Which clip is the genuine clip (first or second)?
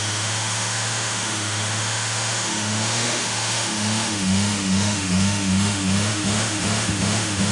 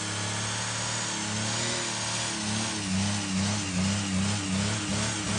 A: second